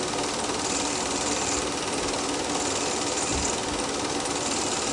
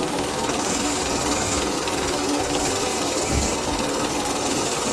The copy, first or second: second